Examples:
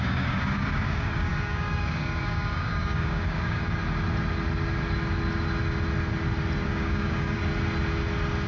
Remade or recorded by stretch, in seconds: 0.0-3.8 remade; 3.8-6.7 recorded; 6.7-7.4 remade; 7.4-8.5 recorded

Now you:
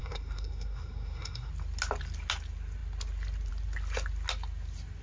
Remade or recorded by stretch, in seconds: 0.0-1.5 remade; 1.5-5.0 recorded